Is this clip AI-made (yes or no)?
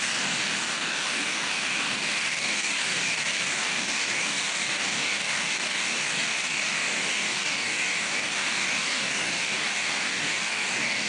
yes